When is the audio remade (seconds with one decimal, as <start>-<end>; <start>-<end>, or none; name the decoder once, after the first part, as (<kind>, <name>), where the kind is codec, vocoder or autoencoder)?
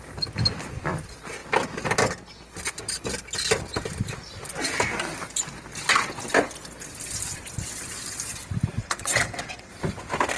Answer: 8.8-9.7 (vocoder, WaveNeXt)